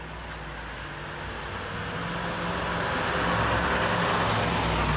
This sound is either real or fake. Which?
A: real